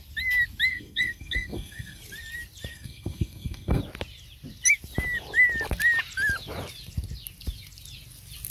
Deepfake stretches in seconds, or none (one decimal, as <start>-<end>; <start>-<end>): 0.7-2.0; 2.7-3.8